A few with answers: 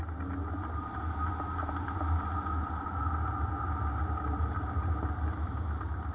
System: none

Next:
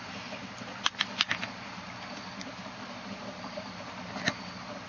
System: none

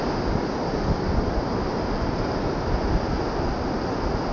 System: none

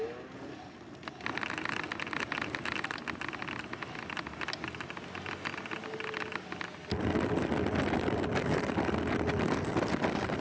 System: none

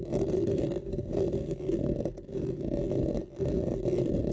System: none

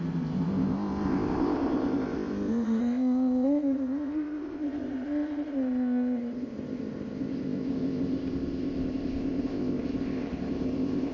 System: codec, ZipCodec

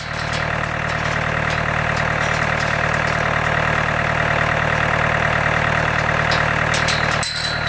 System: none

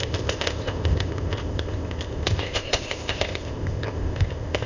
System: codec, ZipCodec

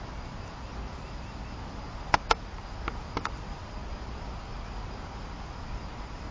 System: none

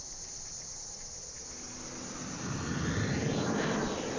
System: none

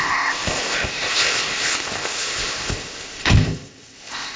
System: codec, ZipCodec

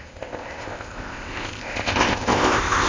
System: codec, ZipCodec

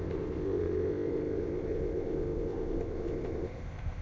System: codec, ZipCodec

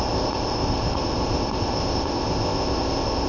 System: codec, ZipCodec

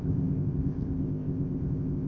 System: codec, ZipCodec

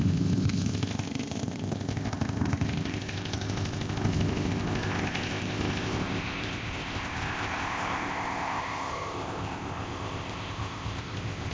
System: codec, ZipCodec